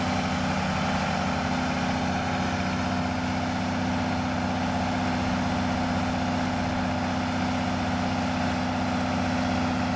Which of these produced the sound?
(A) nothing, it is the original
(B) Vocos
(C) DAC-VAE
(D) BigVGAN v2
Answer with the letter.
A